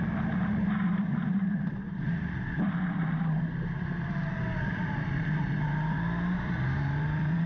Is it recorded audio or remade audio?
remade